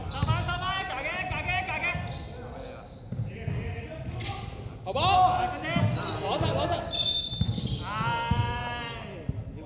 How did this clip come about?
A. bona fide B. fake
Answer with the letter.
A